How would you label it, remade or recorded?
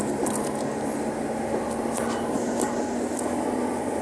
recorded